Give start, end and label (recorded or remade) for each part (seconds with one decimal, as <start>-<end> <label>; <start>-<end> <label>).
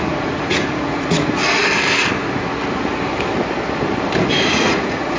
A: 0.0-1.4 remade; 1.4-4.5 recorded; 4.5-5.2 remade